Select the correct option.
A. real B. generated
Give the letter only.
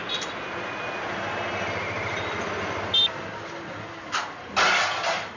A